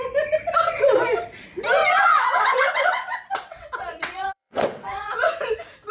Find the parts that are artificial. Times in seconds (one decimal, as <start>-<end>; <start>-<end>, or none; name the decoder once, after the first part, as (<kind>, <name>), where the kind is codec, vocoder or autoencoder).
1.8-5.3 (vocoder, WaveNeXt)